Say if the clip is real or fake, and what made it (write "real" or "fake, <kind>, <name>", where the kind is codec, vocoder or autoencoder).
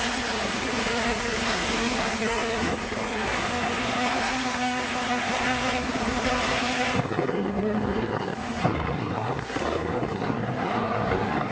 fake, codec, SNAC